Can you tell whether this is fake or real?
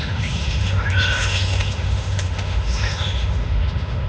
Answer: fake